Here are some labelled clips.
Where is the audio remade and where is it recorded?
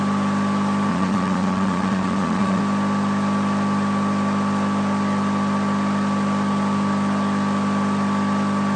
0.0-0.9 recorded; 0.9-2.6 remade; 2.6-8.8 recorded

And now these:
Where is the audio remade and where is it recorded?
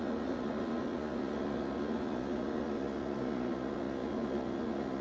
0.0-5.0 remade